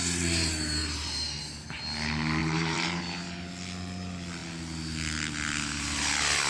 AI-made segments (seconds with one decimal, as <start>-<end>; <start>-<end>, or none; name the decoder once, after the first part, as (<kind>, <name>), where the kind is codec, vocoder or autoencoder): 0.8-1.4 (vocoder, BigVGAN v2); 2.4-3.0